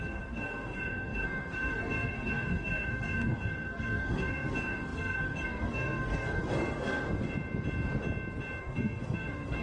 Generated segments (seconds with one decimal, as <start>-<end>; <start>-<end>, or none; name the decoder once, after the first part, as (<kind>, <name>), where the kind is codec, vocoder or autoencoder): 0.0-7.3 (codec, SNAC); 8.6-9.6